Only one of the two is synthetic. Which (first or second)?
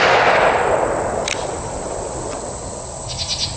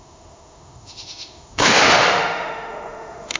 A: second